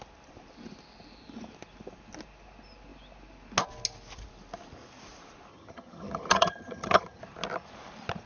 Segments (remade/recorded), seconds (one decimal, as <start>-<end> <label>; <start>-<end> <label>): 0.0-5.5 recorded; 5.5-7.2 remade; 7.2-8.3 recorded